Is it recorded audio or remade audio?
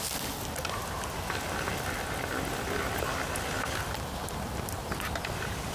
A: recorded